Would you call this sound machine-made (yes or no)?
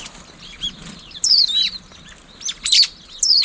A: no